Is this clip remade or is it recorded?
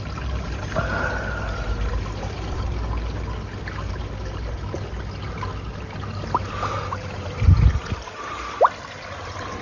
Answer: recorded